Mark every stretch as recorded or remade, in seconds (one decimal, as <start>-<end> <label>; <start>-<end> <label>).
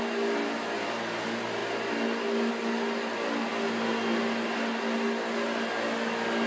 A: 0.0-6.5 recorded